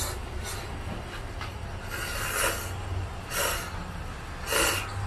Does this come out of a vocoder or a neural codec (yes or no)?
no